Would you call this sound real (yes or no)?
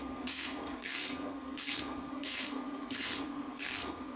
no